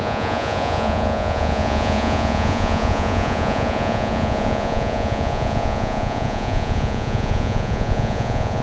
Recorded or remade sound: remade